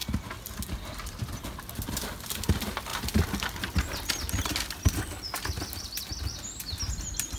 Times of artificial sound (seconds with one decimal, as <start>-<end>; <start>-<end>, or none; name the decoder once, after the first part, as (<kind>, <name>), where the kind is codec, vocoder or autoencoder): none